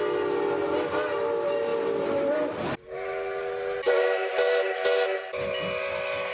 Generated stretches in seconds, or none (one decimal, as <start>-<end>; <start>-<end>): none